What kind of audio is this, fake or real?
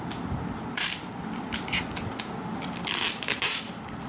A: real